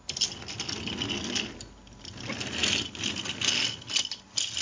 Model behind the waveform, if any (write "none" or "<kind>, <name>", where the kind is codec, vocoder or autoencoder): none